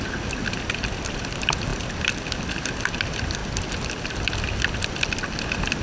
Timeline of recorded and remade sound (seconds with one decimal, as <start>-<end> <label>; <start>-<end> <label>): 0.0-5.8 recorded